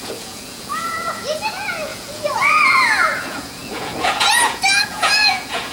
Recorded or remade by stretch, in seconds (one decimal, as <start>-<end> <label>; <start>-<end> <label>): 0.0-5.7 remade